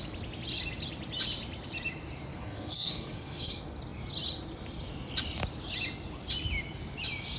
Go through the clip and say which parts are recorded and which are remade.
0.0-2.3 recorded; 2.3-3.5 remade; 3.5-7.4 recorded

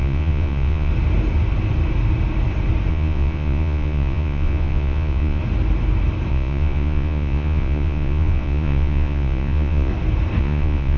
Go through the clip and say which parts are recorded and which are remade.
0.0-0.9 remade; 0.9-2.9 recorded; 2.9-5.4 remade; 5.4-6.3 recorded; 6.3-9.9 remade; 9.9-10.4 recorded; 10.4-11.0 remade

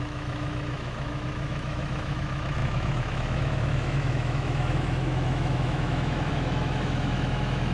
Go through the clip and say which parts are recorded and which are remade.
0.0-7.7 remade

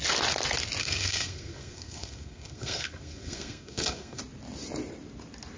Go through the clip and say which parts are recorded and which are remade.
0.0-0.8 recorded; 0.8-4.2 remade; 4.2-5.6 recorded

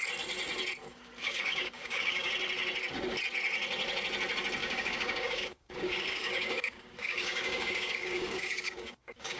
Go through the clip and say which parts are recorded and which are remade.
0.0-0.8 recorded; 0.8-2.3 remade; 2.3-4.6 recorded; 4.6-9.4 remade

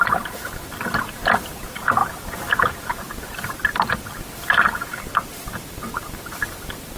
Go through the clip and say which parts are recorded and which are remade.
0.0-2.0 remade; 2.0-5.3 recorded; 5.3-7.0 remade

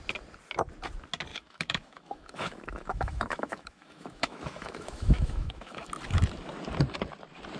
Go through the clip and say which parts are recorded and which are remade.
0.0-1.3 recorded; 1.3-5.9 remade; 5.9-7.6 recorded

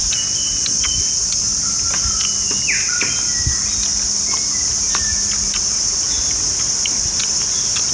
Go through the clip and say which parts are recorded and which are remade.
0.0-7.9 recorded